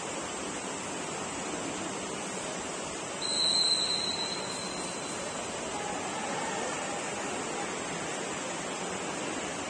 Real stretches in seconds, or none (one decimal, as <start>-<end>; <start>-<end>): 0.0-9.7